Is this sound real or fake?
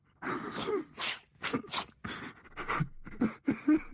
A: real